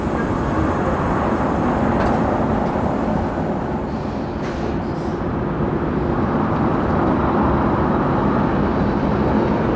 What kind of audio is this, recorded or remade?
recorded